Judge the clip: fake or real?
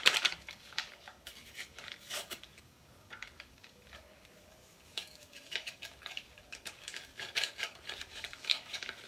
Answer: fake